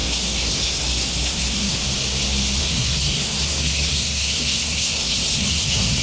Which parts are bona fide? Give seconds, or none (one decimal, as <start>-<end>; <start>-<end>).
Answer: 1.8-2.6